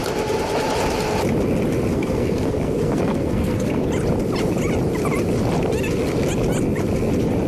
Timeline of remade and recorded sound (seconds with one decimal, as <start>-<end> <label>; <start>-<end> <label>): 0.0-1.9 recorded; 1.9-3.9 remade; 3.9-7.5 recorded